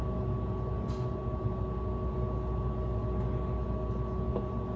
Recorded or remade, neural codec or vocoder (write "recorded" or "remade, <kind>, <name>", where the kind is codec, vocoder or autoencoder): recorded